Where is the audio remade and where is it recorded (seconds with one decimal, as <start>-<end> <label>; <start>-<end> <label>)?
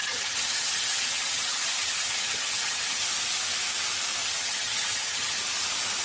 0.0-3.0 remade; 3.0-4.2 recorded; 4.2-5.4 remade; 5.4-6.0 recorded